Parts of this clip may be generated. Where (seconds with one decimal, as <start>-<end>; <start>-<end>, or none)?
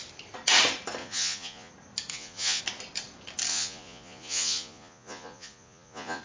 1.0-1.7; 2.1-2.6; 3.5-6.2